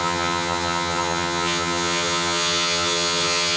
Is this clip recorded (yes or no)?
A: no